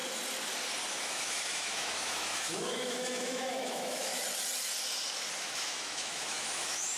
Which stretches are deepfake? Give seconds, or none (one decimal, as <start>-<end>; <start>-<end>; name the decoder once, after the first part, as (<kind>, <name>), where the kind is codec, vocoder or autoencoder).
0.9-4.1 (autoencoder, DAC-VAE); 5.4-7.0